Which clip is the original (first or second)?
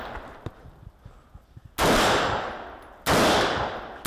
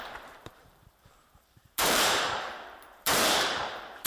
first